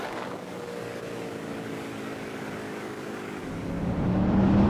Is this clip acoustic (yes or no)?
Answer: no